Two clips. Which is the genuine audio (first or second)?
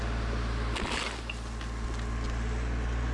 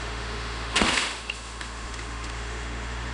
first